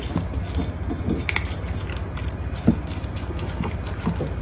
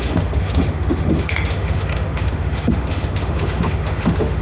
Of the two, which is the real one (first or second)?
first